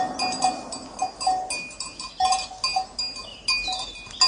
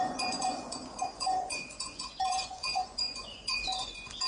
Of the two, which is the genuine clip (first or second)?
first